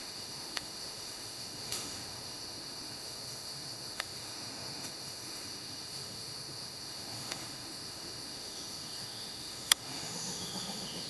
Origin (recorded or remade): remade